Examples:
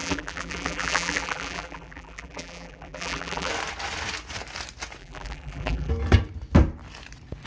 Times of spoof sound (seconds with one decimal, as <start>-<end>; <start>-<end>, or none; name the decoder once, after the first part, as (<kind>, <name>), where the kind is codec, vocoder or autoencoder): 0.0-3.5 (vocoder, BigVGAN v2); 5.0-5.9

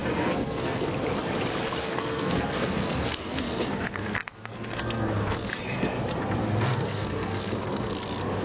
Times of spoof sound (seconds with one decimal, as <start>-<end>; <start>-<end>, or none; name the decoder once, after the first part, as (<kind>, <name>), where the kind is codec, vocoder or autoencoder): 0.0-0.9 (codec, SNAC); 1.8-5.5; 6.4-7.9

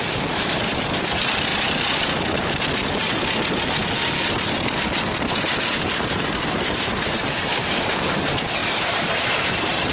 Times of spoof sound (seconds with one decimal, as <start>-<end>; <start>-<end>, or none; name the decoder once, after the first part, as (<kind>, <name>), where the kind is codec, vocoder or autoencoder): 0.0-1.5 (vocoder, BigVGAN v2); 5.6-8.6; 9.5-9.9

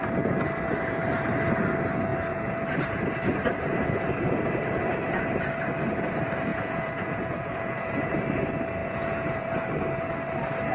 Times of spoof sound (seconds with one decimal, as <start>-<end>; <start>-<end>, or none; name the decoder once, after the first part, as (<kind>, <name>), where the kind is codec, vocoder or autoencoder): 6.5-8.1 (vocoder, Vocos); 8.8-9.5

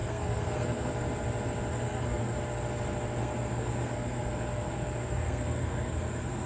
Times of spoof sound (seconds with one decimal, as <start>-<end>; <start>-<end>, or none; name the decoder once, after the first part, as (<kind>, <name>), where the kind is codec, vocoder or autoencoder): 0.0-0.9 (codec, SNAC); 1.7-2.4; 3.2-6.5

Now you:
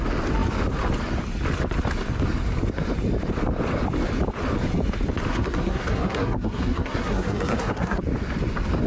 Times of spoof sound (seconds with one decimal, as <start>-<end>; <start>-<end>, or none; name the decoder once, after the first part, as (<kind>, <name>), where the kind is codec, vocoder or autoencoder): 5.3-8.0 (codec, SNAC)

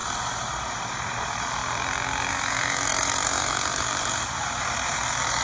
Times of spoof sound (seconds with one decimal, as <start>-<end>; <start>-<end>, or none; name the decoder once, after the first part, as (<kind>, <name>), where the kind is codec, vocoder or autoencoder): 0.0-1.6 (vocoder, BigVGAN v2); 2.3-5.4

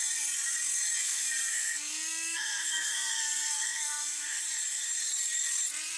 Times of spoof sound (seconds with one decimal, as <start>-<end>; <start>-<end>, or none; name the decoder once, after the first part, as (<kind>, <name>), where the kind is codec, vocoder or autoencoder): 1.0-4.4 (codec, SNAC)